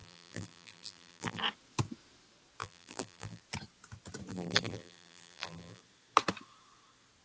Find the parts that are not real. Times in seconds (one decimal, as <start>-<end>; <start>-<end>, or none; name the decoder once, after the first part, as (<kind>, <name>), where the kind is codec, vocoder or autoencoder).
0.0-1.4 (vocoder, BigVGAN v2); 2.6-3.4; 4.3-5.8